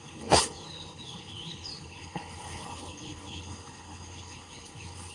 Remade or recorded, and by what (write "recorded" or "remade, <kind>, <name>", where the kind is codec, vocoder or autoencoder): remade, codec, HILCodec